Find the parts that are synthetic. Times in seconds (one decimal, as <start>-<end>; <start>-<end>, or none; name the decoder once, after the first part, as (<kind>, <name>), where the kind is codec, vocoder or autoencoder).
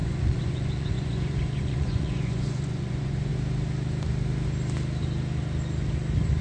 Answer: 0.0-3.3 (vocoder, Vocos)